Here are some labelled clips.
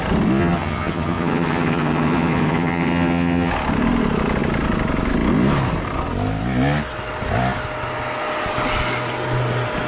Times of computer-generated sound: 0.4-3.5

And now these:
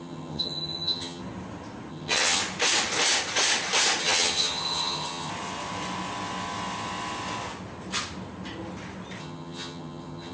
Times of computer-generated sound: 0.0-1.2; 1.9-2.4; 4.0-5.3; 9.2-10.3

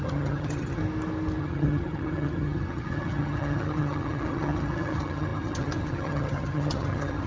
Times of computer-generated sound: 0.0-0.8; 1.4-7.3

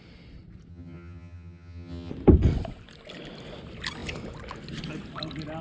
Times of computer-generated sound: 0.7-2.1

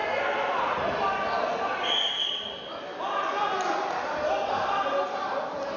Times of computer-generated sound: none